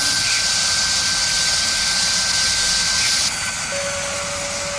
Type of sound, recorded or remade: recorded